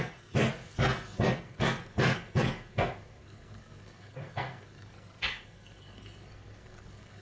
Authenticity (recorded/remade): remade